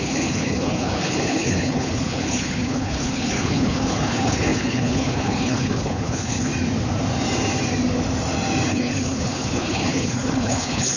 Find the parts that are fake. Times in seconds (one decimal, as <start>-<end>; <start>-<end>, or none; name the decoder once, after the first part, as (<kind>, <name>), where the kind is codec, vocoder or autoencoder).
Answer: 0.0-6.5 (codec, HILCodec); 8.7-11.0